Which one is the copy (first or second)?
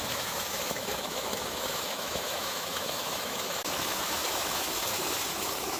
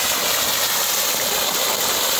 first